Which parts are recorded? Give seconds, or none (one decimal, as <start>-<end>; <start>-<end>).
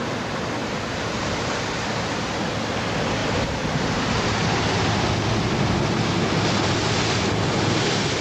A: 0.0-0.6; 2.4-3.2; 4.6-8.2